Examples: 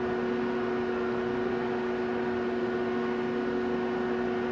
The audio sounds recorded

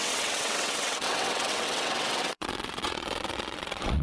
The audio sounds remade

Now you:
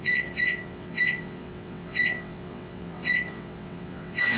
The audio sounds remade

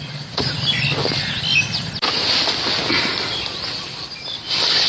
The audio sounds recorded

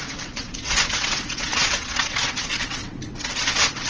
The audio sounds remade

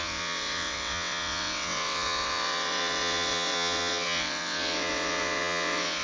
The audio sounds remade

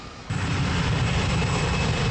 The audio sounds recorded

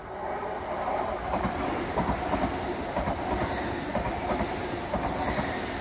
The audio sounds recorded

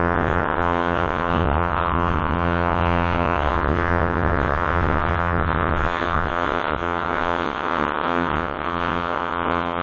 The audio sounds remade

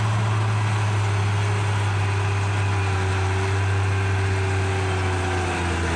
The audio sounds recorded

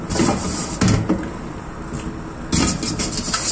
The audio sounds recorded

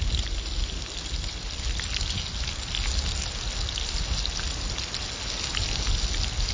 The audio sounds recorded